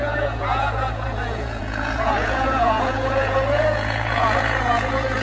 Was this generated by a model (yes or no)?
yes